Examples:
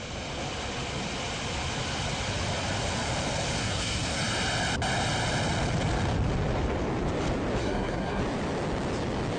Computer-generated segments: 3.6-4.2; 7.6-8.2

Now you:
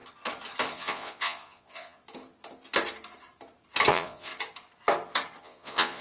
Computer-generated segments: 0.7-2.0; 3.9-4.3; 5.4-6.0

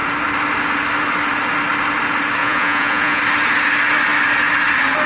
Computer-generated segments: 2.4-3.2

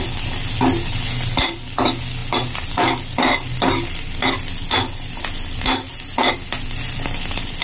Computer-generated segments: none